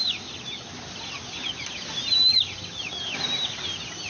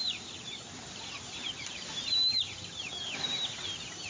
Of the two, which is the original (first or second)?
first